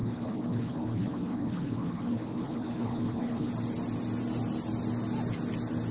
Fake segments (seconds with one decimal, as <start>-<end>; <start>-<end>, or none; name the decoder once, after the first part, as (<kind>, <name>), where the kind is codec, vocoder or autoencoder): 0.0-3.5 (codec, HILCodec)